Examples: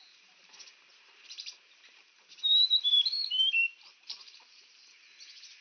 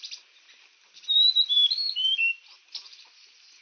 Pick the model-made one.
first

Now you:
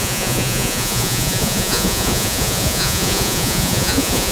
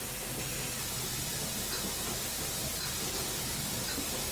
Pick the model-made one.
first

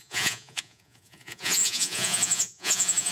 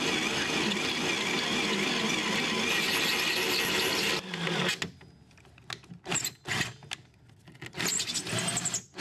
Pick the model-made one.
first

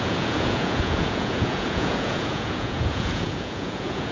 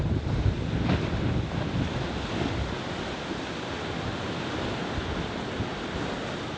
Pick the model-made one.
first